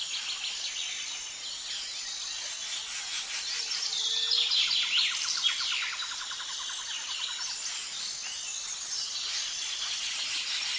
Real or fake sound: real